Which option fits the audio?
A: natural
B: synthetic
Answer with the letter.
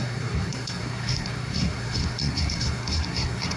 B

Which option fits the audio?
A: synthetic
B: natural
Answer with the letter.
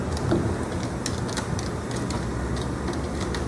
B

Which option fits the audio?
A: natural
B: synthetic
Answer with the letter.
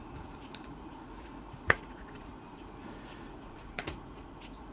B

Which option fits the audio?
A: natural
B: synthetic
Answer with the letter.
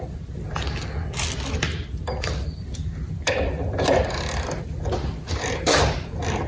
A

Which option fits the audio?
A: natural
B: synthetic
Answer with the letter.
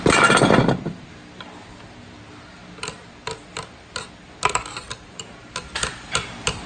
A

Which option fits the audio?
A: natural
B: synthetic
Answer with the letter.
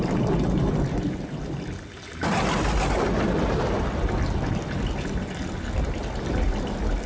A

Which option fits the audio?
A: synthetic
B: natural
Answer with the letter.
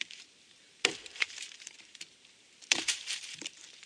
A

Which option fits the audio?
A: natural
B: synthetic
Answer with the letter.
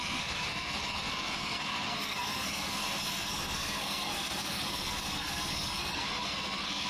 B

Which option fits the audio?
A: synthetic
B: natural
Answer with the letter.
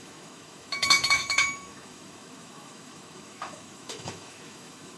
A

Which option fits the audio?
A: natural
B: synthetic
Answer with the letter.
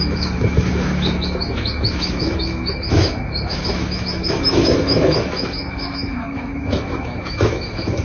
B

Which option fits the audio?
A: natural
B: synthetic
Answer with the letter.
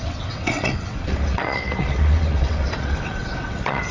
B